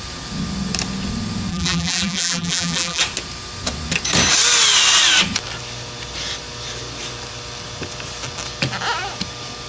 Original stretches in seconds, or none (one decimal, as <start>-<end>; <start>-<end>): 0.0-1.5; 3.0-9.7